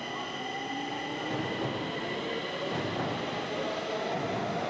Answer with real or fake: real